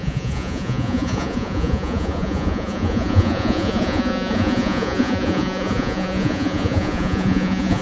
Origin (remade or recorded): remade